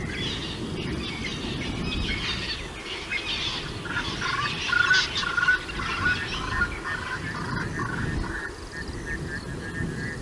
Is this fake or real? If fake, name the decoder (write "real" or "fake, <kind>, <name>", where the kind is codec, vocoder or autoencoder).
real